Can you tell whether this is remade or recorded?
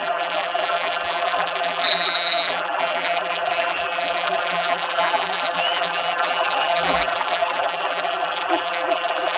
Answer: remade